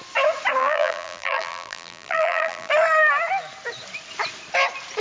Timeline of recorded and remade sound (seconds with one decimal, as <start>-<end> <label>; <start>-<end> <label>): 0.0-0.6 recorded; 0.6-2.7 remade; 2.7-5.0 recorded